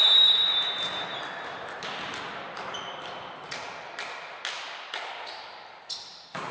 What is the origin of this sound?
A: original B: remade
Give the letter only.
A